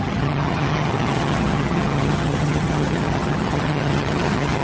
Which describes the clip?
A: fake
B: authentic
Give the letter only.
A